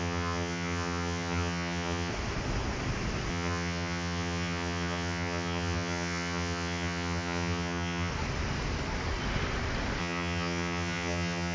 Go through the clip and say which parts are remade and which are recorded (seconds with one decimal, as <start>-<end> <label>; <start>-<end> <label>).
0.0-2.1 remade; 2.1-3.3 recorded; 3.3-8.1 remade; 8.1-10.0 recorded; 10.0-11.5 remade